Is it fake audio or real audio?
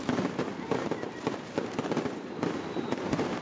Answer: fake